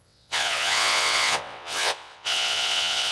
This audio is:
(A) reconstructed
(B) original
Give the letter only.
A